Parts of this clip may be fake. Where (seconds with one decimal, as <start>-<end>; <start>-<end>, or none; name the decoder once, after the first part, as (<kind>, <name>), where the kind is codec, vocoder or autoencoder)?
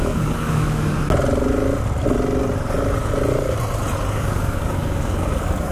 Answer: 0.0-1.0 (codec, DAC); 4.1-5.7